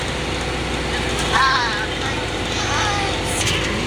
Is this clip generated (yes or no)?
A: no